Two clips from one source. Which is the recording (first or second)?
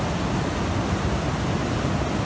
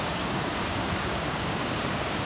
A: first